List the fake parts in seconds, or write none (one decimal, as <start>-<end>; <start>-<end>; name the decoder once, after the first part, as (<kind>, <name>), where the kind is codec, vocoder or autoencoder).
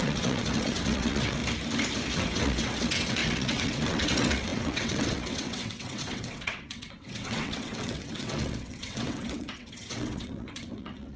0.0-1.4 (vocoder, WaveNeXt); 2.1-11.2